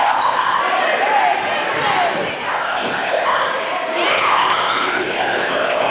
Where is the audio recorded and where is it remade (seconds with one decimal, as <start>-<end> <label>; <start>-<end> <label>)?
0.0-0.6 remade; 0.6-2.5 recorded; 2.5-3.5 remade; 3.5-4.1 recorded; 4.1-5.9 remade